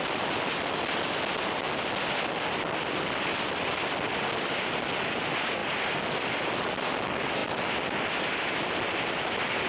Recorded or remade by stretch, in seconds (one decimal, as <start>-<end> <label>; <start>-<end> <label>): 0.0-9.7 recorded